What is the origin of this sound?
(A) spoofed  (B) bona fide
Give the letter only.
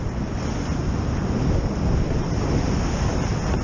B